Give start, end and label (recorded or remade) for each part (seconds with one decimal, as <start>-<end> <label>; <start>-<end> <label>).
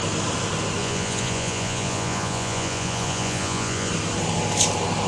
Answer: 0.0-0.8 recorded; 0.8-3.9 remade; 3.9-5.1 recorded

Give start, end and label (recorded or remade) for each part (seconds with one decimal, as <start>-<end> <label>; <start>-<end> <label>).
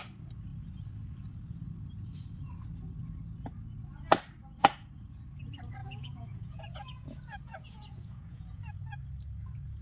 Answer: 0.0-5.8 recorded; 5.8-8.6 remade; 8.6-9.8 recorded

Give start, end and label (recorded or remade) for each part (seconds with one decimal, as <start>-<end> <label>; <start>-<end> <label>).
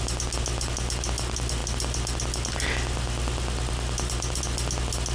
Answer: 0.0-5.1 recorded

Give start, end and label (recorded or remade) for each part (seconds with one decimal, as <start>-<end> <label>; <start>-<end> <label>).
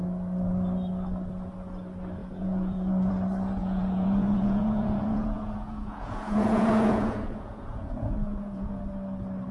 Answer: 0.0-2.2 recorded; 2.2-3.1 remade; 3.1-3.6 recorded; 3.6-8.8 remade; 8.8-9.5 recorded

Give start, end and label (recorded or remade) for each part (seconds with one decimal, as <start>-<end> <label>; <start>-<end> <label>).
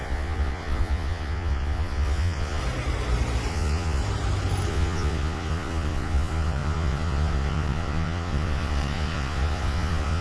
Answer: 0.0-2.6 remade; 2.6-3.5 recorded; 3.5-4.0 remade; 4.0-4.7 recorded; 4.7-10.2 remade